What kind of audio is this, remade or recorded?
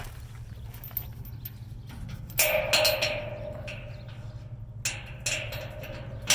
recorded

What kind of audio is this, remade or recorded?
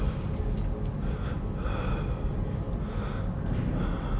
recorded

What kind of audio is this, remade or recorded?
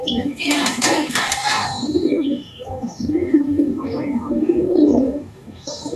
remade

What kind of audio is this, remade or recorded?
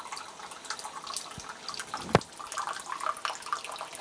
recorded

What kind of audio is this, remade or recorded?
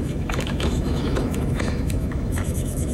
remade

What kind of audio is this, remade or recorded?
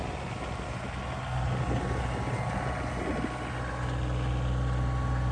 recorded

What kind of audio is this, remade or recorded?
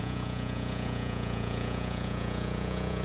remade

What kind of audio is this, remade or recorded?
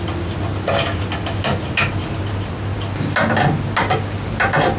recorded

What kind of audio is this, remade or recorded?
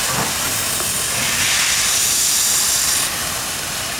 recorded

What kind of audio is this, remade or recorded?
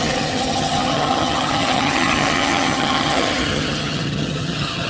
remade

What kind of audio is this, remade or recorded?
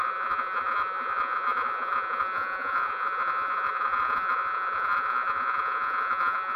remade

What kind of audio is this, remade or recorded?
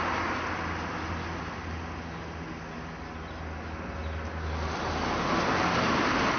recorded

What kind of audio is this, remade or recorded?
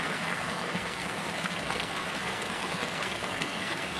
remade